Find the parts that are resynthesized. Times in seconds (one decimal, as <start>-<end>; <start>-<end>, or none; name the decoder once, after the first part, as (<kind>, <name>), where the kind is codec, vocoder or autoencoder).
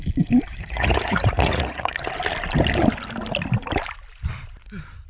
0.5-2.0 (vocoder, Vocos)